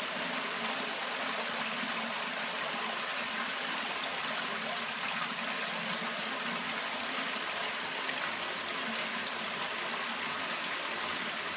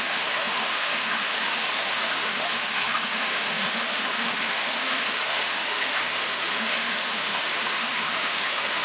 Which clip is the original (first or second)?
first